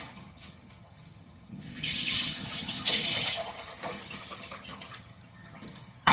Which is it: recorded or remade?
remade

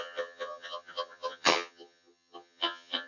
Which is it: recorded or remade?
remade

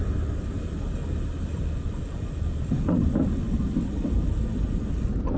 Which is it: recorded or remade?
recorded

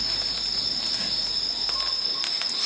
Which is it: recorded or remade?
recorded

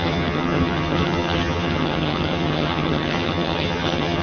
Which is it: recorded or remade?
remade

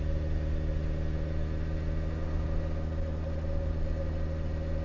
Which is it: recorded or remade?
recorded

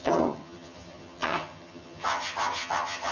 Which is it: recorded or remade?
remade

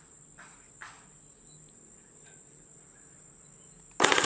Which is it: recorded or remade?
recorded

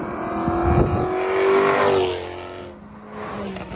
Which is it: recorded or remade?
recorded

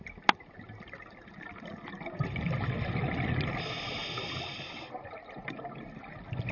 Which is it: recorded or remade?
recorded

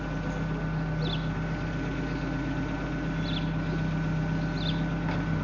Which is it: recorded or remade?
recorded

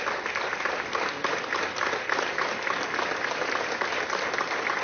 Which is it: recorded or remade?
recorded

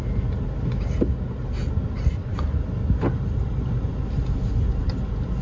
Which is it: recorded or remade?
recorded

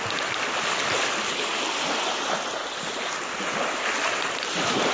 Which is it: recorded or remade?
recorded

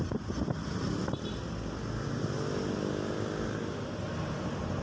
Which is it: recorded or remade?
recorded